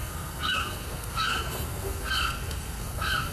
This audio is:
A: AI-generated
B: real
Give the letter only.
A